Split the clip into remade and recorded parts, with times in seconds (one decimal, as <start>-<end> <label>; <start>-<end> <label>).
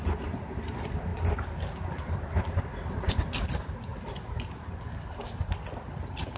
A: 0.0-6.4 recorded